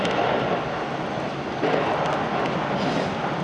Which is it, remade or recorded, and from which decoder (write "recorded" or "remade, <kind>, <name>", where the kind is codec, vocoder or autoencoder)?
recorded